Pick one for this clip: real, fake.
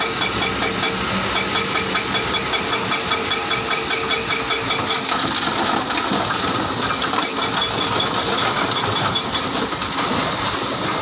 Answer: real